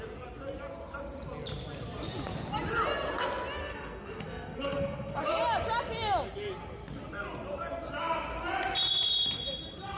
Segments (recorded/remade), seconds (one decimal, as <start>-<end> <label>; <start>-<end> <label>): 0.0-3.6 recorded; 3.6-5.2 remade; 5.2-10.0 recorded